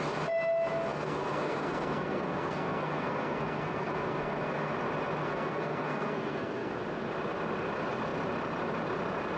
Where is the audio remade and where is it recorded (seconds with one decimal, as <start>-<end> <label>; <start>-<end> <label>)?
0.0-0.9 recorded; 0.9-4.7 remade; 4.7-5.2 recorded; 5.2-6.7 remade; 6.7-9.4 recorded